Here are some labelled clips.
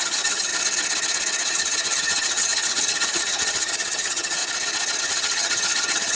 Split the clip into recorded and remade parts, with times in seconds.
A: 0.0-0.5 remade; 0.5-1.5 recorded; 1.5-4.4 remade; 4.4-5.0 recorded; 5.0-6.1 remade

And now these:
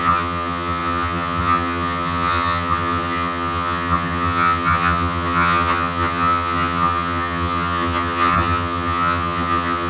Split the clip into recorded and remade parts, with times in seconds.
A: 0.0-9.9 remade

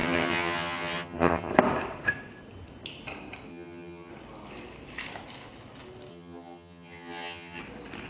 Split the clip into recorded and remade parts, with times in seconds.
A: 0.0-1.5 remade; 1.5-3.5 recorded; 3.5-4.1 remade; 4.1-6.1 recorded; 6.1-7.6 remade; 7.6-8.1 recorded

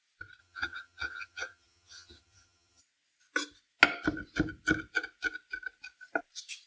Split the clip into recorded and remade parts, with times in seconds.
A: 0.0-0.4 recorded; 0.4-2.8 remade; 2.8-6.7 recorded

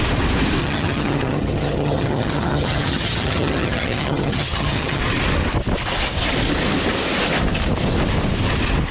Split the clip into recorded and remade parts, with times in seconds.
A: 0.0-0.6 recorded; 0.6-5.0 remade; 5.0-8.9 recorded

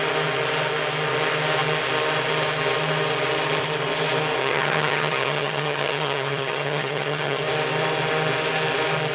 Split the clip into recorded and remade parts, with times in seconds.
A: 0.0-4.4 recorded; 4.4-7.4 remade; 7.4-9.1 recorded

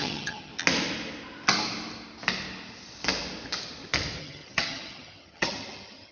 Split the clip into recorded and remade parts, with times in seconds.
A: 0.0-0.5 remade; 0.5-4.2 recorded; 4.2-6.1 remade